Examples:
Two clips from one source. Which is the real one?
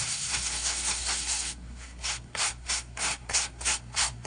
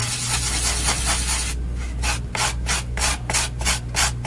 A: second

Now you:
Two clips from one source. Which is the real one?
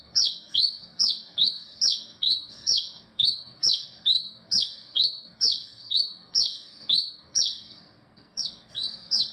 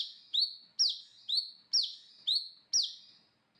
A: second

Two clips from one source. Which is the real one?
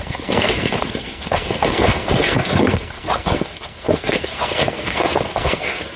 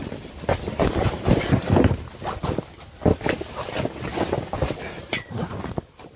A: second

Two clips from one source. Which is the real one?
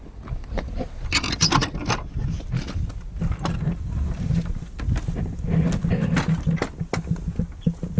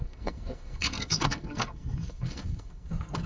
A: first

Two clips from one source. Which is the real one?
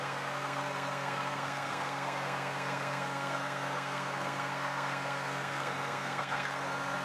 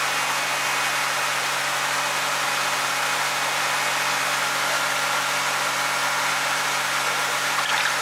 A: second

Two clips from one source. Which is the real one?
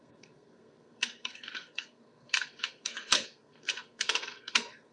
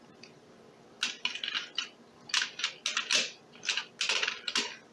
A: second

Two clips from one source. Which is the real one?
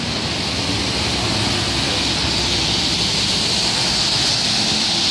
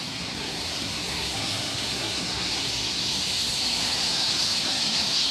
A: first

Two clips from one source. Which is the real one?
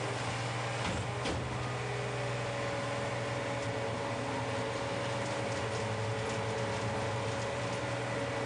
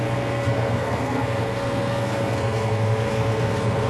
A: first